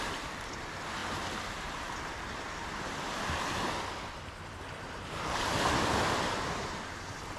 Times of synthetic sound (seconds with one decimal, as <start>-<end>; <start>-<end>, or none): none